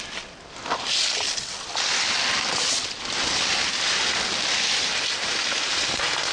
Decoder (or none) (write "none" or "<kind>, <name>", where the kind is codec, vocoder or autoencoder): none